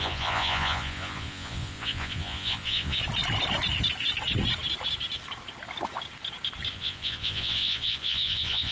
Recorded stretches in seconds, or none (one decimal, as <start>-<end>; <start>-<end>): 3.0-6.7